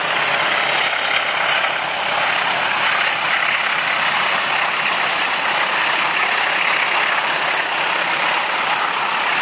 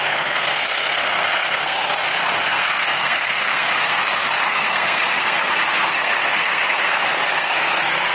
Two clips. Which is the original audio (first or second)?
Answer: first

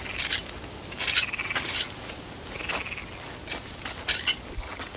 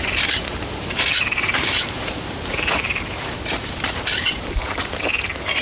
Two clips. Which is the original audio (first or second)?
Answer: first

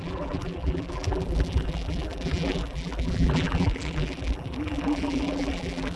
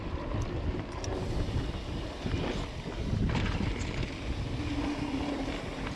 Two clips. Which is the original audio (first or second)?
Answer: second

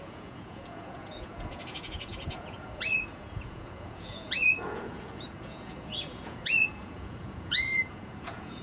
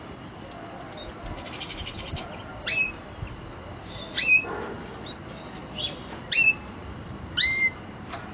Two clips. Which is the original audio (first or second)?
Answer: second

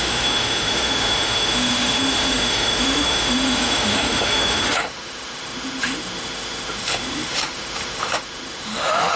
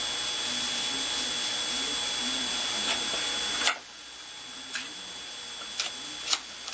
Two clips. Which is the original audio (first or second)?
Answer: second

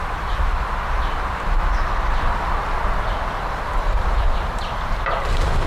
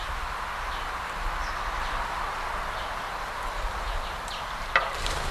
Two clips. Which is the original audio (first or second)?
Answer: second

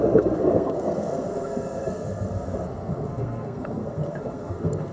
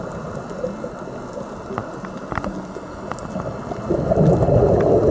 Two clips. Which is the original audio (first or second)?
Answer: second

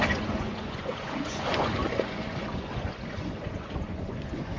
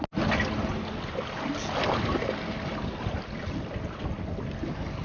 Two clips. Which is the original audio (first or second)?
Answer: second